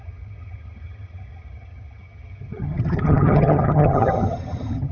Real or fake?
fake